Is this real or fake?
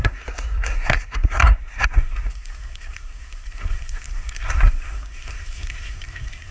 fake